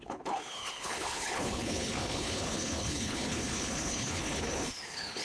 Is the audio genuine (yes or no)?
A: no